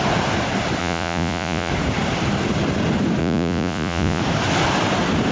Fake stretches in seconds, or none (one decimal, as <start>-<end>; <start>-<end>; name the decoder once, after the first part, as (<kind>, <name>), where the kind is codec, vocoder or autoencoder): 0.8-1.7 (vocoder, Vocos); 3.2-4.2